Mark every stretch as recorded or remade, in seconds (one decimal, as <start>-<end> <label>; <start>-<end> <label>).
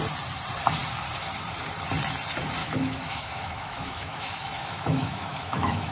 0.0-2.6 recorded; 2.6-5.9 remade